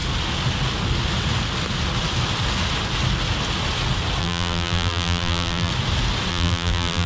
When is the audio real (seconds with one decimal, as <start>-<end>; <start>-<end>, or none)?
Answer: 0.0-4.2; 5.7-6.3